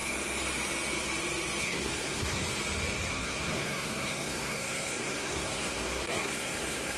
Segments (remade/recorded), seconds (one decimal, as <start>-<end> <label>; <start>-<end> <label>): 0.0-1.6 recorded; 1.6-2.4 remade; 2.4-3.1 recorded; 3.1-7.0 remade